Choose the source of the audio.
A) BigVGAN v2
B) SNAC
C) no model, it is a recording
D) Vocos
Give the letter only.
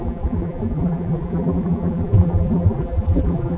A